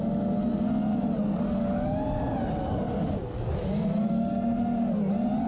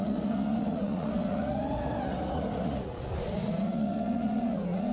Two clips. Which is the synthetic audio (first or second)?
second